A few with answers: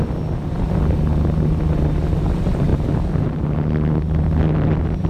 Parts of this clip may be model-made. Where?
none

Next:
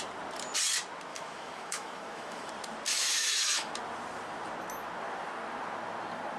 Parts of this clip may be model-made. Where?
1.1-2.5 (autoencoder, DAC-VAE); 2.9-3.7

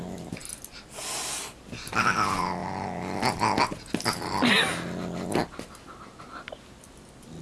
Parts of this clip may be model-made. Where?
none

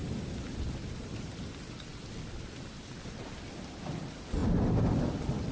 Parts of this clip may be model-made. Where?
none